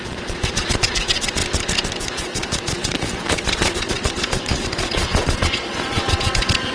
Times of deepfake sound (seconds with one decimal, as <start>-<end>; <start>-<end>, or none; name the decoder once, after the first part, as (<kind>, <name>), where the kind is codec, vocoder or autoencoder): 0.0-1.4 (vocoder, Vocos); 2.0-6.7